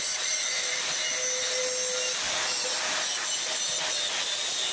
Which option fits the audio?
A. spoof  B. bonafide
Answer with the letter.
B